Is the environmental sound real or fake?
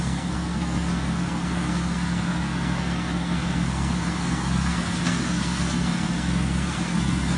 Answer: fake